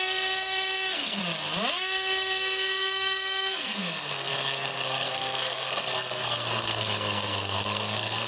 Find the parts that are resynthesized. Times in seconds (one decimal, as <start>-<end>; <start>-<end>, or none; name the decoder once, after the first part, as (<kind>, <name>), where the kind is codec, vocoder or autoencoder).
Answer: 0.0-1.2 (codec, SNAC); 1.7-8.3

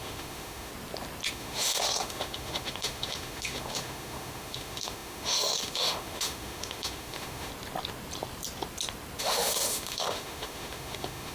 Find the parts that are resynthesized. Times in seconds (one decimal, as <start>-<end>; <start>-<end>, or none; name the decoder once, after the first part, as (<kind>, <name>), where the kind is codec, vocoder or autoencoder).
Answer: 0.0-0.7 (autoencoder, DAC-VAE); 1.3-7.5; 9.2-11.3

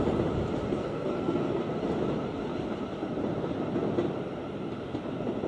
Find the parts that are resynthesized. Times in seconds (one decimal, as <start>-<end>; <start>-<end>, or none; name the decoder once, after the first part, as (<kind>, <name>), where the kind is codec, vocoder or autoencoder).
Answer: 0.8-1.7 (codec, SNAC)

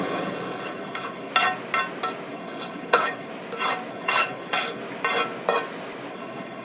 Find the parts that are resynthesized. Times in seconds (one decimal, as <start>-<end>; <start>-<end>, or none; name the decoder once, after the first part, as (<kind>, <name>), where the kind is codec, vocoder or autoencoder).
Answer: 0.0-1.3 (codec, HILCodec); 2.3-3.3; 3.9-4.8; 6.1-6.6

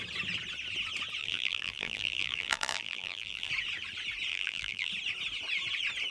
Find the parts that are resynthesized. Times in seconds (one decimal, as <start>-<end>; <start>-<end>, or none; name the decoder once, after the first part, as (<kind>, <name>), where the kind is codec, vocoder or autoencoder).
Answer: 1.2-3.5 (vocoder, BigVGAN v2); 4.3-4.9

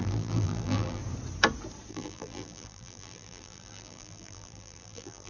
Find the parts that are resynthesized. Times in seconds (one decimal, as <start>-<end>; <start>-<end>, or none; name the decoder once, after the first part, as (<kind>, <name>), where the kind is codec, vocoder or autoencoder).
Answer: 0.0-1.0 (vocoder, BigVGAN v2); 1.9-5.3

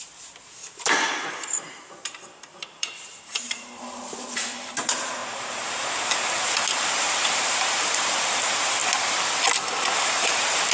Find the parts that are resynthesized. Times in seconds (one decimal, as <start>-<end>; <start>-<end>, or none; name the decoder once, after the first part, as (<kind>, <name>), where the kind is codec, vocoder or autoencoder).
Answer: 0.0-8.8 (vocoder, BigVGAN v2); 9.9-10.7

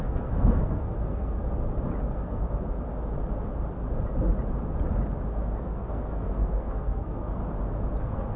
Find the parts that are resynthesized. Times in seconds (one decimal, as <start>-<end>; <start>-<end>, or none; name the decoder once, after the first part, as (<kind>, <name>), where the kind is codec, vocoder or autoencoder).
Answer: 0.0-1.4 (codec, SNAC); 2.0-2.4; 5.3-7.4; 8.0-8.4